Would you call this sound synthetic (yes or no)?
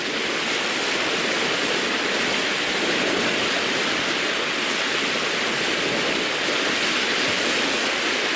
no